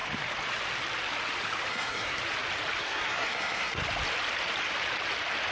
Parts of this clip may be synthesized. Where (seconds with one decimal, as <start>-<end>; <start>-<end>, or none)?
1.7-2.2; 2.8-3.8